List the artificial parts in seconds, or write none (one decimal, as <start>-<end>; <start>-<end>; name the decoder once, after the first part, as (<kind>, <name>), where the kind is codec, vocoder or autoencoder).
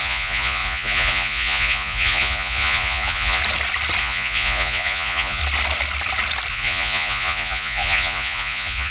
0.0-3.4 (vocoder, Vocos); 4.0-5.4; 6.5-8.9